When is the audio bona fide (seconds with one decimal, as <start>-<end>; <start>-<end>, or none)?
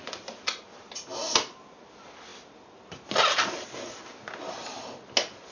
0.0-5.5